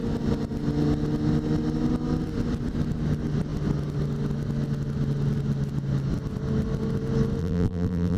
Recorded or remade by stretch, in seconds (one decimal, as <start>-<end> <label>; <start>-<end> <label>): 0.0-7.4 recorded; 7.4-8.2 remade